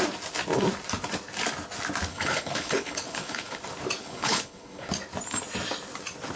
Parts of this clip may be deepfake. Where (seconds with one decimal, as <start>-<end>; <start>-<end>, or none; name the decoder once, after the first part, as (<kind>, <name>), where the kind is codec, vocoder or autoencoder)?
2.1-3.6 (codec, HILCodec); 4.0-4.9

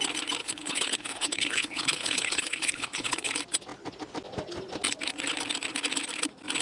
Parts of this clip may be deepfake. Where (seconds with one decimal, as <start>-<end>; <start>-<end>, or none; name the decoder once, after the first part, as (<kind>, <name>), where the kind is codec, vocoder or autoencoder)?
0.4-3.3 (codec, HILCodec)

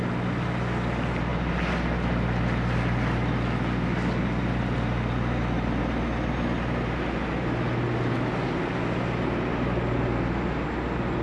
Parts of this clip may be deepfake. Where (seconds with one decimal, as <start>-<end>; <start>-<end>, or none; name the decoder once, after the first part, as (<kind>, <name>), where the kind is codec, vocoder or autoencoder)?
none

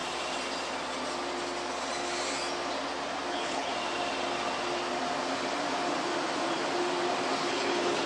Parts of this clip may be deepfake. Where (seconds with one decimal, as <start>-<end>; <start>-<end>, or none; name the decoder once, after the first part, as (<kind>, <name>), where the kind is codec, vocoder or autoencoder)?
3.3-3.7 (codec, HILCodec); 7.5-8.1

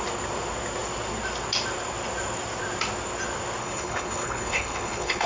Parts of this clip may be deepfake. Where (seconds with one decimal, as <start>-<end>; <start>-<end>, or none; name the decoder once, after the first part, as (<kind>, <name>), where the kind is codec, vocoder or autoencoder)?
3.6-5.3 (codec, HILCodec)